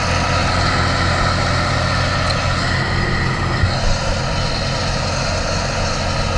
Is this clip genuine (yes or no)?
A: yes